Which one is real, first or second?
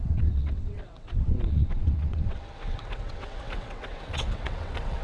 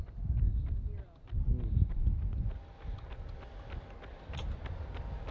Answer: second